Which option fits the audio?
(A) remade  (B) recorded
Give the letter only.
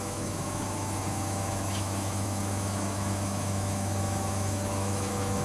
A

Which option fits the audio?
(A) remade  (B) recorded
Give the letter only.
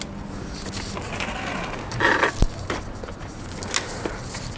B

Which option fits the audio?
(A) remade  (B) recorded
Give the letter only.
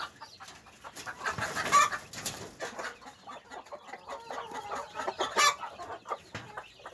B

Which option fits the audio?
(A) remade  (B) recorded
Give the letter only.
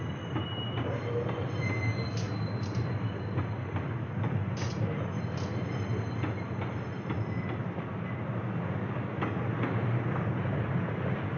B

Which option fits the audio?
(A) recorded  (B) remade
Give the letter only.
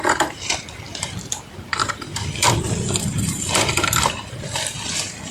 B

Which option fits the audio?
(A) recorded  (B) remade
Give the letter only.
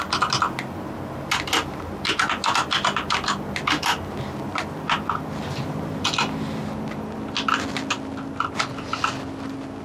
A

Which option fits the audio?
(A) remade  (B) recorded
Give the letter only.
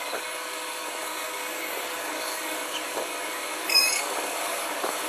A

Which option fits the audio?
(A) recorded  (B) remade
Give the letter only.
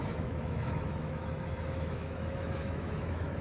B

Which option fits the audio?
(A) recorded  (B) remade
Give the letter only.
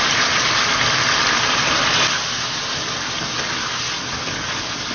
A